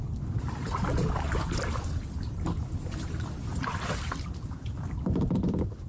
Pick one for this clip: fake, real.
fake